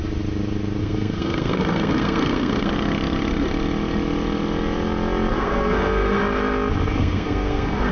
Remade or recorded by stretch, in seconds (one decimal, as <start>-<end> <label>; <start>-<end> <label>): 0.0-0.8 recorded; 0.8-2.7 remade; 2.7-5.3 recorded; 5.3-6.2 remade; 6.2-7.0 recorded; 7.0-7.9 remade